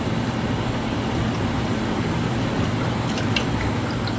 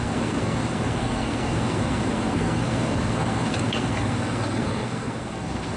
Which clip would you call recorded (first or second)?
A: first